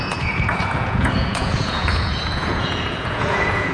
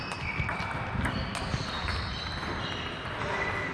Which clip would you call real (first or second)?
second